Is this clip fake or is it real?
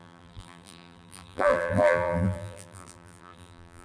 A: fake